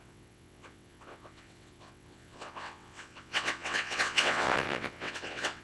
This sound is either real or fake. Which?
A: fake